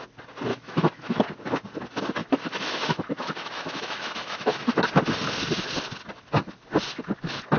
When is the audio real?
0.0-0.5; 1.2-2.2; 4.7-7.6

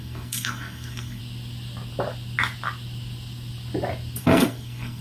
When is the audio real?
1.2-4.2

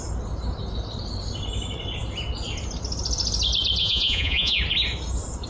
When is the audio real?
0.0-3.8; 4.6-5.5

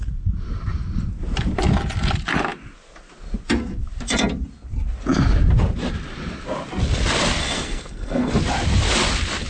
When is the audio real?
0.0-7.4; 8.3-9.5

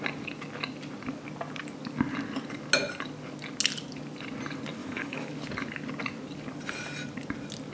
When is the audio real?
0.0-4.8; 5.3-7.7

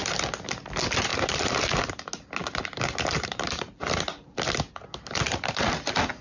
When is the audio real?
0.0-1.1; 1.9-2.4; 4.3-6.2

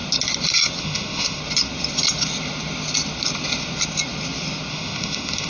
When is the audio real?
0.0-0.8; 1.4-4.7

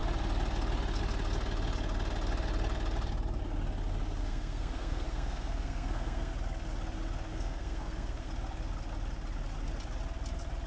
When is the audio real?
0.0-4.2; 6.3-7.3; 8.3-10.7